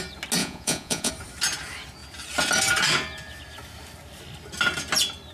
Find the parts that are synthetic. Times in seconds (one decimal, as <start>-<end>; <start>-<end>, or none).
0.4-1.1